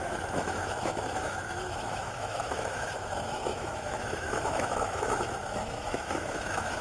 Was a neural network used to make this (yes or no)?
yes